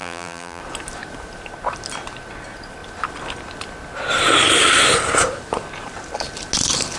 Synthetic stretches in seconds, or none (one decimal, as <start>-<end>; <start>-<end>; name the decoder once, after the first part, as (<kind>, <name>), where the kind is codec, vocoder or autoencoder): 0.0-0.6 (vocoder, BigVGAN v2)